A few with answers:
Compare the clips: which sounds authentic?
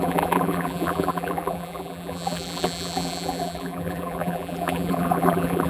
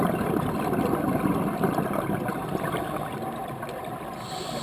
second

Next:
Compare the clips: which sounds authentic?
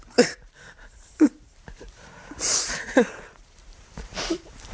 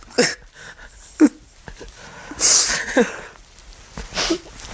second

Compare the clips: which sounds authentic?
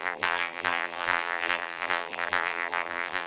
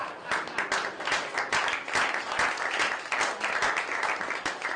second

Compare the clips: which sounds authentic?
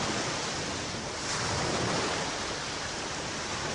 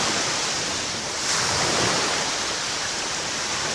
first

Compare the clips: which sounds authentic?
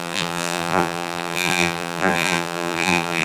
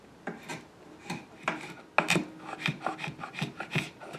second